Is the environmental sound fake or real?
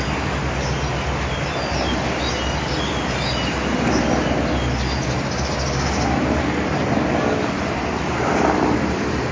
real